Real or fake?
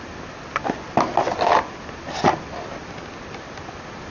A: real